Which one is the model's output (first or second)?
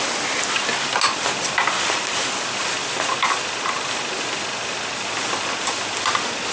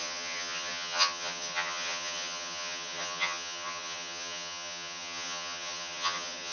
second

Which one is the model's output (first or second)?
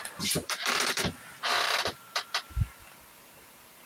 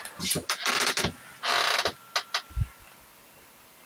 first